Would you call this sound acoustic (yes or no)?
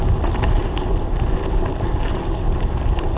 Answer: yes